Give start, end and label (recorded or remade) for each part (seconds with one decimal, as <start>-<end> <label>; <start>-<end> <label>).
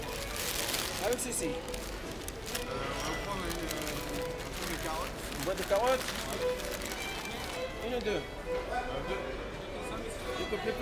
0.0-10.8 recorded